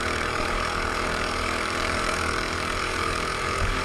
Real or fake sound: fake